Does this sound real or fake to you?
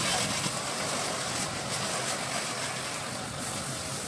real